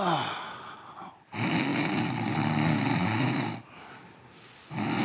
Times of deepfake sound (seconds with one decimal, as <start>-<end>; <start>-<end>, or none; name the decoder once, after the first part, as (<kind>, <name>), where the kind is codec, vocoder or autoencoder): none